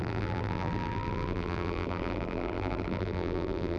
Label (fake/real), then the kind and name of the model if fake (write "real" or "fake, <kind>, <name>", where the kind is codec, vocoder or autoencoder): fake, vocoder, BigVGAN v2